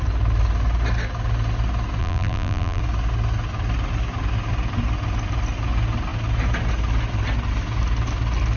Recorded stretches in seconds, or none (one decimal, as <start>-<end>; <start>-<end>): 0.0-2.0; 2.8-8.6